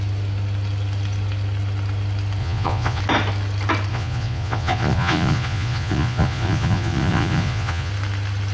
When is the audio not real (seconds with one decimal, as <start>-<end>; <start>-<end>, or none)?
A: 2.4-3.0; 3.9-7.9